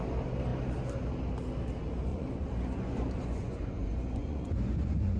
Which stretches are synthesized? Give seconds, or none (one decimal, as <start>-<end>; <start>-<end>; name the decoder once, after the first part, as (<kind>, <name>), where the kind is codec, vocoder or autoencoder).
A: 2.1-5.2 (vocoder, Vocos)